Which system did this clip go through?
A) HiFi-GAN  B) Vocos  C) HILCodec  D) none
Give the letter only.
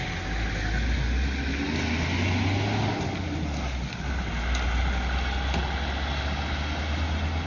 D